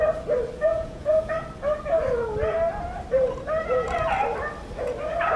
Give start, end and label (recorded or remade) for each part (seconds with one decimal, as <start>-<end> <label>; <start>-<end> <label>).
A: 0.0-0.7 recorded; 0.7-1.3 remade; 1.3-5.4 recorded